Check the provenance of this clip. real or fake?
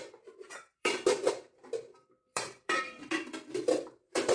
fake